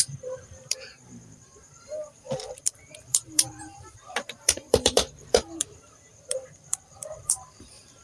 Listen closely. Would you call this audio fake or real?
fake